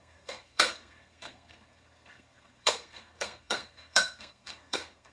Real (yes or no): no